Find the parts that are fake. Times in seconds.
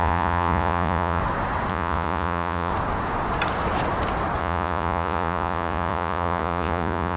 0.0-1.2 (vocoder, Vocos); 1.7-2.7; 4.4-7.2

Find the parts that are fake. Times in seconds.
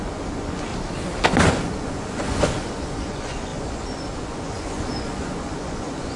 0.0-0.7 (vocoder, Vocos); 1.5-6.2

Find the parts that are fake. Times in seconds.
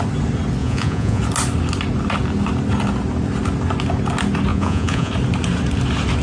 0.6-1.2 (vocoder, Vocos); 4.5-5.1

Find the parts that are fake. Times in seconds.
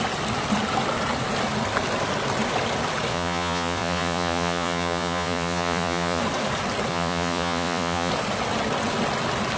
3.1-6.2 (vocoder, Vocos); 6.9-8.1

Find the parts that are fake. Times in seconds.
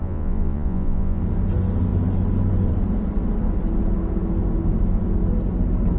0.0-1.2 (vocoder, Vocos)